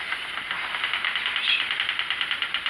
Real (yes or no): yes